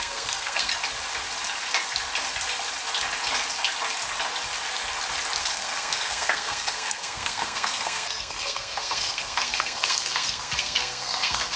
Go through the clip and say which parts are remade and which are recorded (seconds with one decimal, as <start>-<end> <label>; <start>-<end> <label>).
0.0-0.7 remade; 0.7-5.4 recorded; 5.4-11.6 remade